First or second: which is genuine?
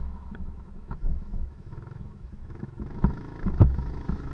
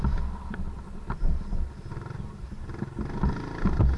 second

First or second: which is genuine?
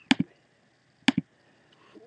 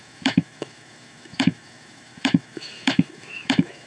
first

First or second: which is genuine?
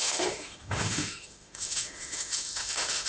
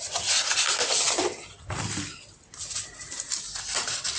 second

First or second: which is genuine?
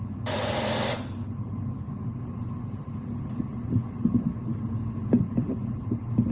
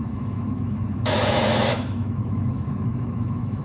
first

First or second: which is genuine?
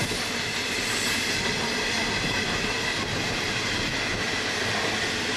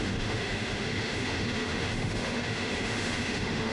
first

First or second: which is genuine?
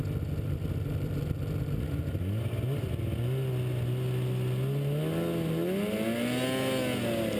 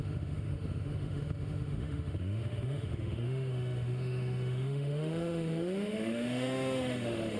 first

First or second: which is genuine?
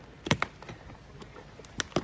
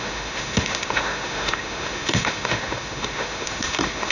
first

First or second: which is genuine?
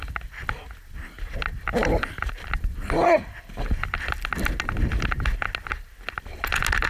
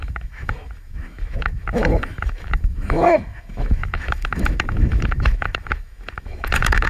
first